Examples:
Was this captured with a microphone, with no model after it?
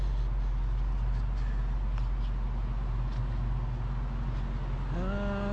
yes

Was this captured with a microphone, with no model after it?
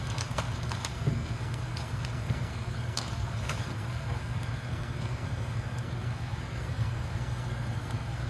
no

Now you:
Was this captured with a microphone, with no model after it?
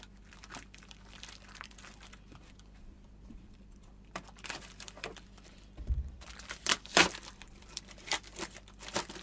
no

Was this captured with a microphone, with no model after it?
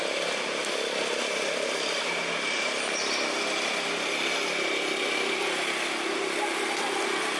yes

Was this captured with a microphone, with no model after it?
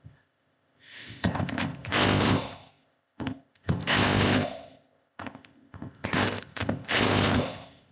no